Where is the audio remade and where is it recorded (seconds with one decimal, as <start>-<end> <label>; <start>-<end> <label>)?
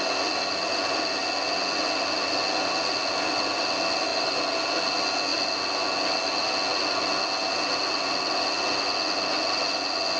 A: 0.0-10.2 recorded